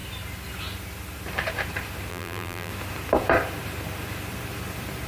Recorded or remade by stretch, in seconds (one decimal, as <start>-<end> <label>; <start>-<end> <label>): 0.0-2.1 recorded; 2.1-2.7 remade; 2.7-5.1 recorded